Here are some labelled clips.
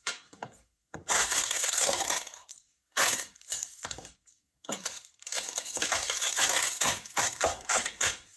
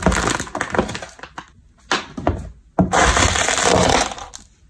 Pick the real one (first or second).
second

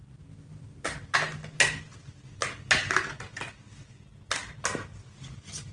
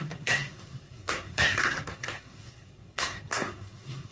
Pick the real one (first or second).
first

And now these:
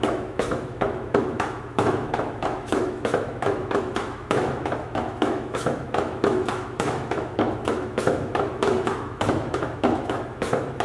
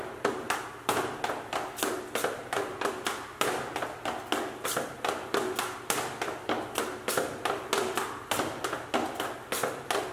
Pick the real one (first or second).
second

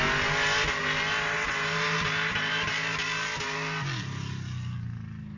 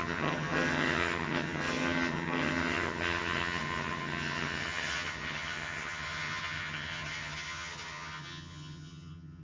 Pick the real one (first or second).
first